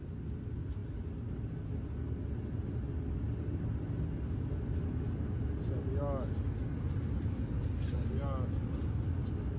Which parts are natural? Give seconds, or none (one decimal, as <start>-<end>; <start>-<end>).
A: 0.0-9.6